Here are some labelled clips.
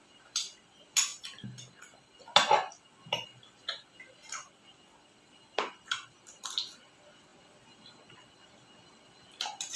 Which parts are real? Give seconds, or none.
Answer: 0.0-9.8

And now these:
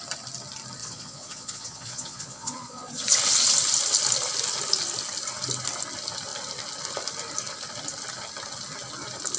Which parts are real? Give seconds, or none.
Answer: 0.0-0.8; 2.9-9.4